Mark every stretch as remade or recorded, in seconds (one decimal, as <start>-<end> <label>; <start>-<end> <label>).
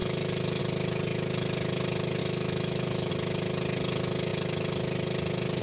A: 0.0-0.6 remade; 0.6-2.2 recorded; 2.2-3.1 remade; 3.1-5.6 recorded